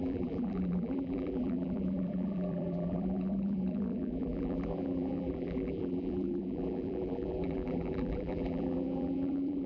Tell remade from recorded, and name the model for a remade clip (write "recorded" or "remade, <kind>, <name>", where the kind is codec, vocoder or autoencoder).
remade, vocoder, BigVGAN v2